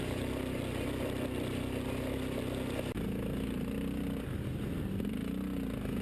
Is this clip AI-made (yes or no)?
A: no